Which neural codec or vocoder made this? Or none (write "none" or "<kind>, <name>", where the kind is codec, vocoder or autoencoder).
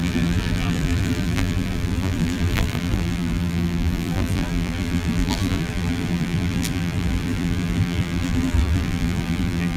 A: vocoder, BigVGAN v2